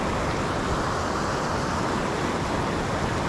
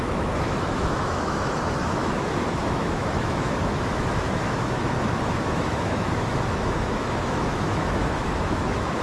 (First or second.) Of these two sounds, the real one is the first